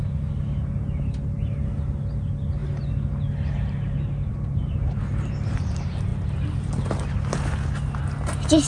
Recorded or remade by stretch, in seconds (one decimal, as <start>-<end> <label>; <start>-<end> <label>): 0.0-8.7 recorded